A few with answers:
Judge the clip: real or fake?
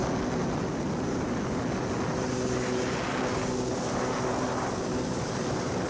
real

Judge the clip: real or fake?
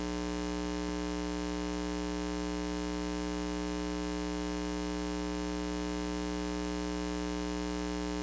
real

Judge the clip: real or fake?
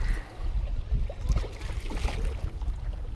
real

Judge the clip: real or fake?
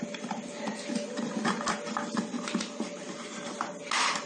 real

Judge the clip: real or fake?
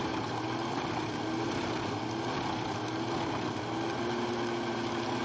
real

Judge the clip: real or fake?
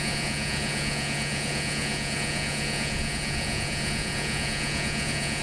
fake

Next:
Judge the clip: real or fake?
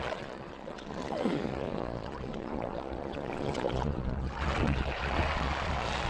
fake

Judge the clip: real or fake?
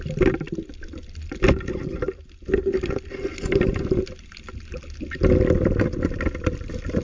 real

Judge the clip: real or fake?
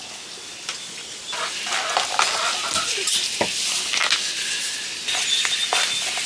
real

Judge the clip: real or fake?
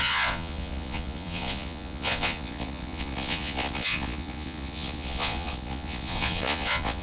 fake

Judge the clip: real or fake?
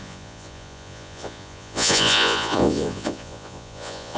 fake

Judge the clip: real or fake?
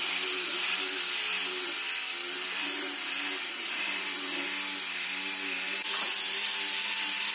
real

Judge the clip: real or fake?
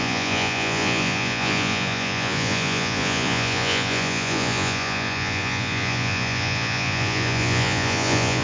fake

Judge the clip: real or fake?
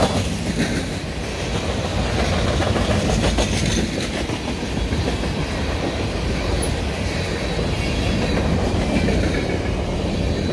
real